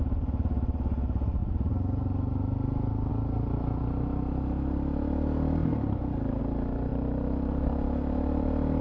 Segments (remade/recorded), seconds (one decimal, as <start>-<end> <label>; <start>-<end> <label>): 0.0-5.6 recorded; 5.6-6.4 remade; 6.4-6.9 recorded; 6.9-7.7 remade; 7.7-8.8 recorded